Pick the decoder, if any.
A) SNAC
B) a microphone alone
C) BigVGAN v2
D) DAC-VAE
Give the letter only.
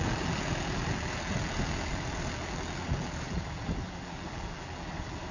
C